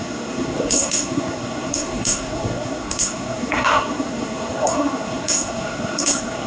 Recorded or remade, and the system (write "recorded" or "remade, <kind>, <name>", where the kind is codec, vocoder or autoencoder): remade, codec, SNAC